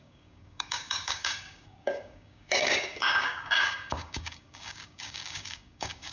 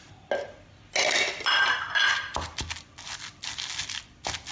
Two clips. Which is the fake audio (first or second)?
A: first